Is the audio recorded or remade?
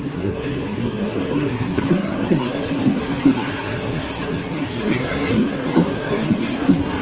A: remade